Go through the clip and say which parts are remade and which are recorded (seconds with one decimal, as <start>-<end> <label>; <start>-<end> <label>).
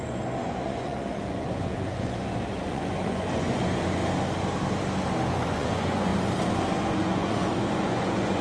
0.0-4.0 remade; 4.0-5.3 recorded; 5.3-6.1 remade; 6.1-6.7 recorded; 6.7-8.4 remade